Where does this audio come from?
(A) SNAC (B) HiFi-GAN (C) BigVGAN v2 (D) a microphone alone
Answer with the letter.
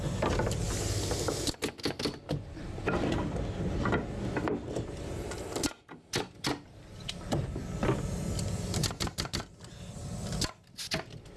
D